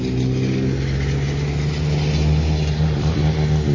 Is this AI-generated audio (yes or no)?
no